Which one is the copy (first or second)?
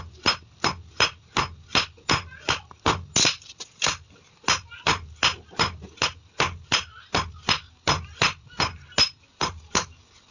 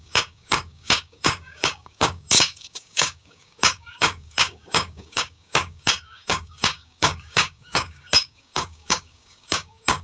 second